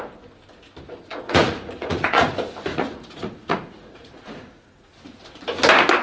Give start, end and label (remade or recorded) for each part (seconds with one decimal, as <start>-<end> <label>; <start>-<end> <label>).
0.0-1.1 recorded; 1.1-2.3 remade; 2.3-2.7 recorded; 2.7-4.9 remade; 4.9-6.0 recorded